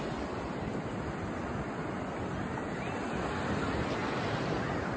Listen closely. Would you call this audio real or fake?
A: real